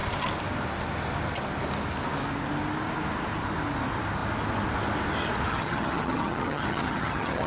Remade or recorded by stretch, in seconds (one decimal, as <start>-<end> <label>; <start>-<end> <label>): 0.0-5.5 recorded; 5.5-7.5 remade